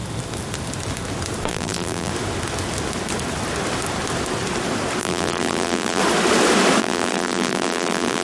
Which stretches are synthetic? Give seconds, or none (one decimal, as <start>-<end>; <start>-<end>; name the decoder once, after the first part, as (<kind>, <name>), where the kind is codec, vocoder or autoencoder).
1.5-2.1 (vocoder, BigVGAN v2); 5.0-6.0; 6.8-8.2